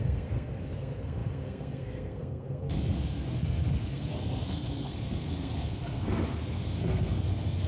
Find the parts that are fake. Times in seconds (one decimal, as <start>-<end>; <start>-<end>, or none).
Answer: 0.0-7.7

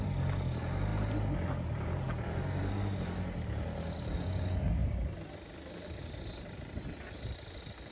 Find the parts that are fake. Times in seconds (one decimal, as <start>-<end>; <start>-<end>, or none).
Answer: none

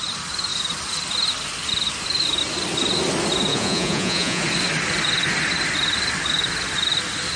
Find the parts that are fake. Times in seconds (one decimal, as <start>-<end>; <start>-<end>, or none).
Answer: 3.5-4.4

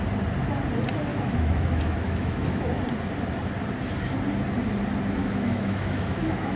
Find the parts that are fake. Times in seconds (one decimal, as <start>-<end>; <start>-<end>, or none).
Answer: 1.1-2.8; 5.2-6.6

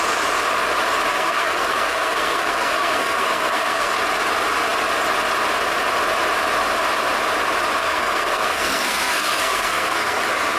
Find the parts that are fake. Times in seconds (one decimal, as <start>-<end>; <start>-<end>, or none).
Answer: 1.1-3.9; 7.8-10.2